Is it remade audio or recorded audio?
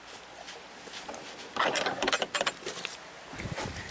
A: recorded